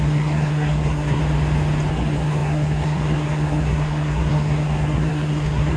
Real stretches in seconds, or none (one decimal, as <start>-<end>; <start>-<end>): 1.2-1.9